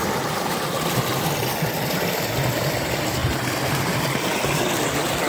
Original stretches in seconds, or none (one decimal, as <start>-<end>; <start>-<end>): 0.0-3.2; 4.0-5.3